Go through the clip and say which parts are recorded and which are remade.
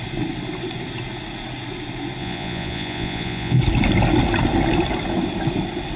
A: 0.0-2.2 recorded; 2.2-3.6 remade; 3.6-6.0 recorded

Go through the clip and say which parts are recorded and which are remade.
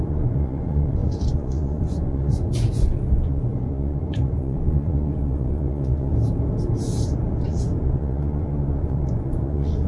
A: 0.0-6.1 remade; 6.1-7.4 recorded; 7.4-9.9 remade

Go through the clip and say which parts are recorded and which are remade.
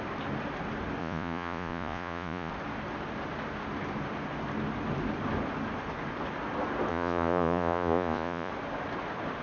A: 0.0-1.0 recorded; 1.0-2.5 remade; 2.5-6.9 recorded; 6.9-8.5 remade; 8.5-9.4 recorded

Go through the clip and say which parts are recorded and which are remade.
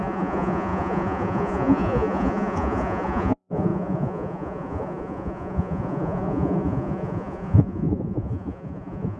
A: 0.0-9.2 remade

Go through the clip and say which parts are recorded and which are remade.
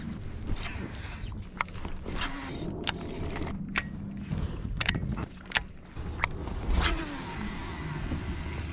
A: 0.0-4.6 recorded; 4.6-5.3 remade; 5.3-6.4 recorded; 6.4-7.0 remade; 7.0-8.7 recorded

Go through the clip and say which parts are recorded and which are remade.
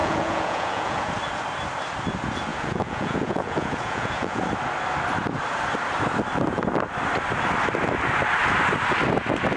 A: 0.0-1.1 remade; 1.1-2.5 recorded; 2.5-4.4 remade; 4.4-9.6 recorded